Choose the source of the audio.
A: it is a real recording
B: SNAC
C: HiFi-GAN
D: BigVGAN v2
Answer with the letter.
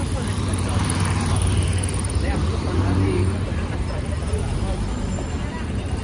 D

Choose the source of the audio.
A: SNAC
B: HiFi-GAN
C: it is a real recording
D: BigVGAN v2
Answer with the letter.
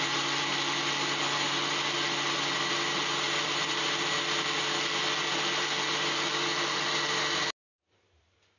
C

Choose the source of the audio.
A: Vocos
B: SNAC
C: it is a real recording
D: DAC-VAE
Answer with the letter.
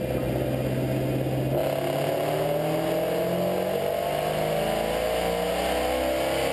C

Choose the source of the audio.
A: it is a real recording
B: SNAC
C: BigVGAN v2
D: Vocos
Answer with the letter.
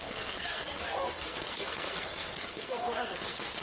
B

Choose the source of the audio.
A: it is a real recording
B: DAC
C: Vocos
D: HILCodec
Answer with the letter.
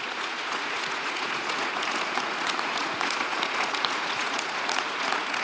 C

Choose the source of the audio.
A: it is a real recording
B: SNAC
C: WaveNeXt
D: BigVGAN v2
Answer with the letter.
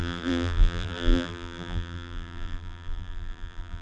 D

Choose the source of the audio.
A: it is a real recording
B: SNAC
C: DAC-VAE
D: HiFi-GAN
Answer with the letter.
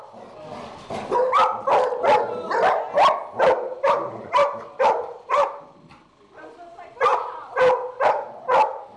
A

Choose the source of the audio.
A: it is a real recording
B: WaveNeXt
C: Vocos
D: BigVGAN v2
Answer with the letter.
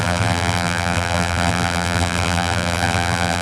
D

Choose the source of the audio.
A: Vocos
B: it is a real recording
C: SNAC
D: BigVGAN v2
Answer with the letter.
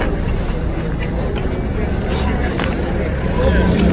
B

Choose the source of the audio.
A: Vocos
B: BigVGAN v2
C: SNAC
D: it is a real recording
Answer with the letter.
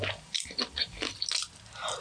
D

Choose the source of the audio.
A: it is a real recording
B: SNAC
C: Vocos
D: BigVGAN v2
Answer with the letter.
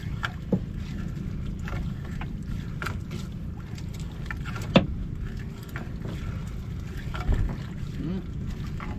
A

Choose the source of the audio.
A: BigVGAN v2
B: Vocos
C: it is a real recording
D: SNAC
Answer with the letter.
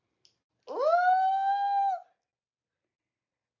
C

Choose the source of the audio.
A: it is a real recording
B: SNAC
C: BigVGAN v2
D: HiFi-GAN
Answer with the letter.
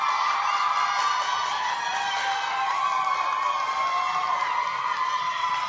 A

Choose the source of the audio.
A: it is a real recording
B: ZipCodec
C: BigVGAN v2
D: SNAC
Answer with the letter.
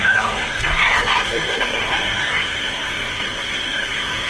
D